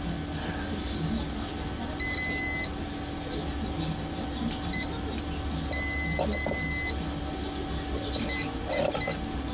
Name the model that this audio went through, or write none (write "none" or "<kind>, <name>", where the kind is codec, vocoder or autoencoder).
none